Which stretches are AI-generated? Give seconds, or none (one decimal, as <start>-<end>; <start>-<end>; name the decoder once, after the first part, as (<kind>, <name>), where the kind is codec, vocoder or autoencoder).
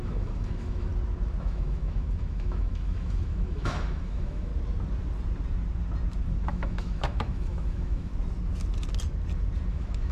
0.0-0.9 (autoencoder, DAC-VAE); 1.4-4.5; 6.4-8.1; 9.7-10.1